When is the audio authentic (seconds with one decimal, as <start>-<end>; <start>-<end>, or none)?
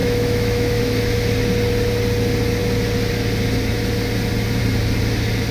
0.8-5.5